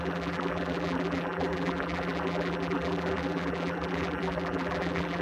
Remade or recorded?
remade